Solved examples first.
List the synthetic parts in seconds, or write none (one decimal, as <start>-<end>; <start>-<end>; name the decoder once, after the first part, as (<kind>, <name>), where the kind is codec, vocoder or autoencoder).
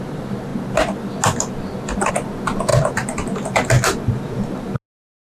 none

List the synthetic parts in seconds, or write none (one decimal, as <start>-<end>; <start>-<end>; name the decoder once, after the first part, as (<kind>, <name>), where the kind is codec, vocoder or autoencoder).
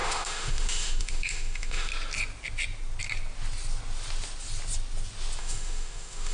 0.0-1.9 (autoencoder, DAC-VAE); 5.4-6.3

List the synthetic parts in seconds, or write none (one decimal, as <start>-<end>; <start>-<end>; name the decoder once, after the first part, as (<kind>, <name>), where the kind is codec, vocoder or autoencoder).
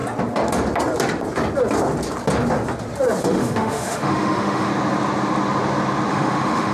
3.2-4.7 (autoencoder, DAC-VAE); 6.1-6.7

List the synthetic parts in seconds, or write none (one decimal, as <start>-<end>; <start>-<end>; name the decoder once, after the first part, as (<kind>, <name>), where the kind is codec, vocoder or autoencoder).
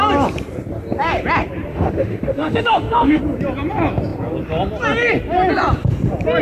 1.7-3.2 (autoencoder, DAC-VAE)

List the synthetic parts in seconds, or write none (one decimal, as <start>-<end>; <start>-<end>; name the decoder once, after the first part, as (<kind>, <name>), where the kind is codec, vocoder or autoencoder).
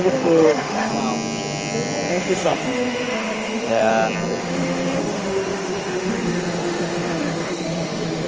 0.0-0.9 (autoencoder, DAC-VAE); 2.1-3.9; 4.4-8.3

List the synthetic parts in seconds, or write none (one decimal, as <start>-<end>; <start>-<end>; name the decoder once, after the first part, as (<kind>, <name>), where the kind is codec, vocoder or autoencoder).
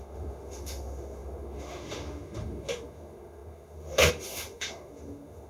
0.0-5.5 (autoencoder, DAC-VAE)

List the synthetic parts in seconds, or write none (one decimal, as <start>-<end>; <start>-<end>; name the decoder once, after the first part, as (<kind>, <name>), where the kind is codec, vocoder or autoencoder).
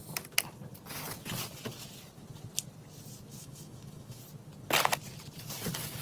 3.3-4.2 (autoencoder, DAC-VAE)